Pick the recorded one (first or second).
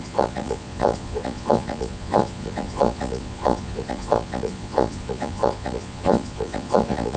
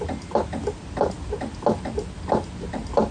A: second